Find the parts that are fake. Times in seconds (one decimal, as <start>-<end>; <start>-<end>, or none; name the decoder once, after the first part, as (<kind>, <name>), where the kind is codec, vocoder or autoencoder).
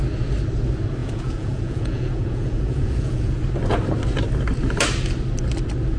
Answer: 1.0-3.4 (vocoder, Vocos)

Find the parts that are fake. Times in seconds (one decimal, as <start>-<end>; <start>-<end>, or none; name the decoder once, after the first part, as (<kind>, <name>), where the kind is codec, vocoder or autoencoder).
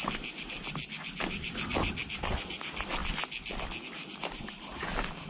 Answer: none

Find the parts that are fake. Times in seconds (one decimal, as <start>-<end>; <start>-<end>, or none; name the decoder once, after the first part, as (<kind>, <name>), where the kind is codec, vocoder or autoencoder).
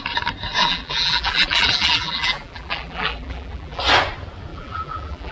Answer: 0.6-3.8 (vocoder, BigVGAN v2); 4.5-5.3